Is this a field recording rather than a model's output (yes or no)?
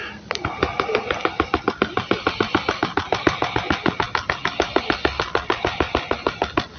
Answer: yes